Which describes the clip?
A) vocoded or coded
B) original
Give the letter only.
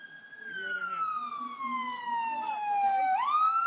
B